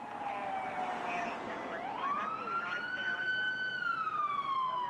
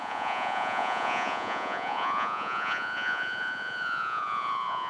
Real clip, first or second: first